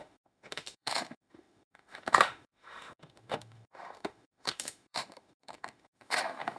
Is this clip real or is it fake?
fake